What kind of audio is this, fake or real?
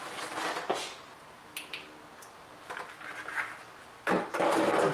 real